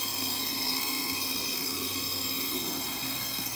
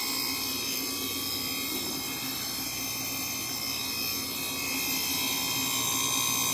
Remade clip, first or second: first